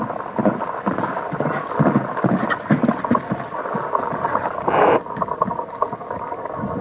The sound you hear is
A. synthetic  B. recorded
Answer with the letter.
B